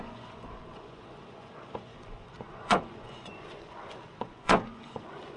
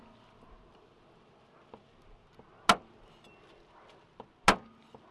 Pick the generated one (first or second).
first